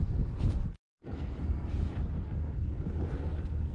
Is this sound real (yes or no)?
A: no